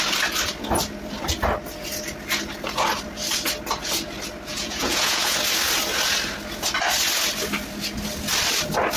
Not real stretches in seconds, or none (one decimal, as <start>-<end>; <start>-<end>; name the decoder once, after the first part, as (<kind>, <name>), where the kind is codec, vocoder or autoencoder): 4.5-5.4 (vocoder, Vocos)